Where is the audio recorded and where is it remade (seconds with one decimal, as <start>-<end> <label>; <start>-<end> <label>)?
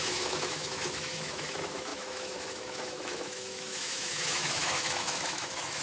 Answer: 0.0-5.8 remade